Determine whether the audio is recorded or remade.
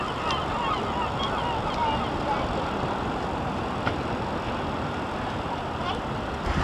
recorded